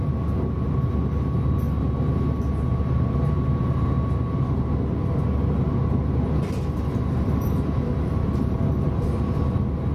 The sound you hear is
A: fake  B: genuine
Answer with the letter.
B